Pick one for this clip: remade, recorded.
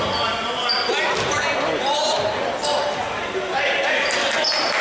recorded